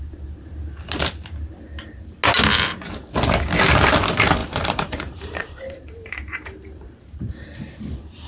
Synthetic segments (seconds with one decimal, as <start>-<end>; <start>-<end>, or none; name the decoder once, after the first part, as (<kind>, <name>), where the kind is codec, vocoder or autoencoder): 4.4-8.3 (vocoder, BigVGAN v2)